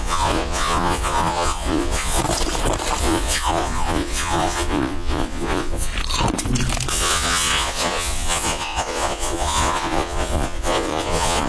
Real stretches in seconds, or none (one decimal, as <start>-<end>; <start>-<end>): 2.2-3.0; 5.9-6.9